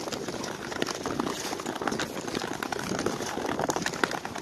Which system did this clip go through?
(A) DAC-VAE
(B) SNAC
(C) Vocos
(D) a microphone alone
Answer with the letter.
D